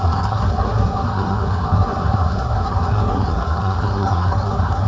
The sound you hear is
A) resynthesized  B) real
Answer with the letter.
A